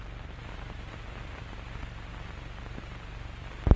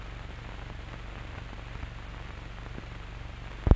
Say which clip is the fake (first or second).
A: first